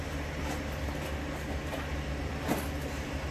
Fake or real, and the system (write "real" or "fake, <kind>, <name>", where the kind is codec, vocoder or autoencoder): real